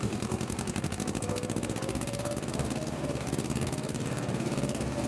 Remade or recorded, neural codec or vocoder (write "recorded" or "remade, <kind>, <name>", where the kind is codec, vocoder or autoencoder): remade, codec, DAC